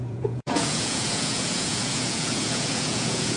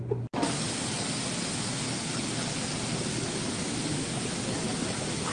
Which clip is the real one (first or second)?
second